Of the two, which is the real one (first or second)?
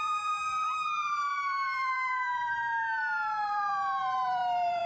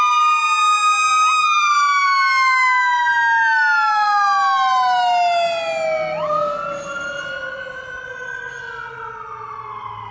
second